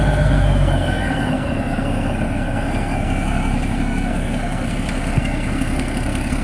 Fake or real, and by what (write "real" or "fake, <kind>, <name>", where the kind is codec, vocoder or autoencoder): fake, codec, SNAC